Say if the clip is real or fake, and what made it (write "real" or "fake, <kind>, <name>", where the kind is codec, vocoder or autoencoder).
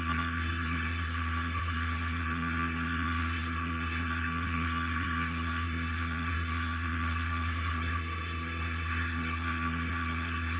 fake, codec, SNAC